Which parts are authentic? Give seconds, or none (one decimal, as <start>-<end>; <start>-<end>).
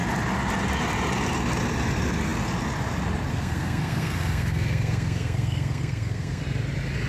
0.0-3.3; 6.4-7.1